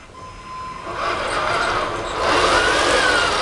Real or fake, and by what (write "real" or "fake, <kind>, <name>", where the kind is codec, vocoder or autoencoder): real